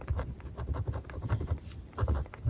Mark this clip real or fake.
fake